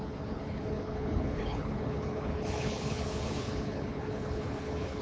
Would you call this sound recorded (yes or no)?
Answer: no